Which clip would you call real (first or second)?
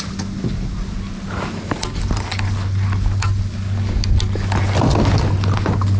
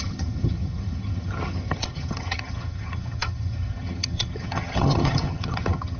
first